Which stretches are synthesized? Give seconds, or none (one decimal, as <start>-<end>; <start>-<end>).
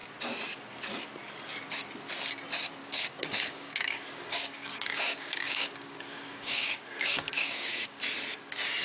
2.8-8.0